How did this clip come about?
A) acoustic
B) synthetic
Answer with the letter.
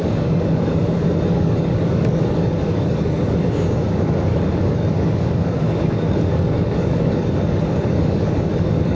B